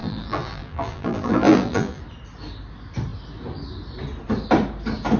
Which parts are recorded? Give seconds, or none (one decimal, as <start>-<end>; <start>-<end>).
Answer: 2.0-5.2